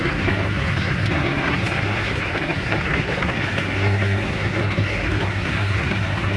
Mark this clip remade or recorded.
remade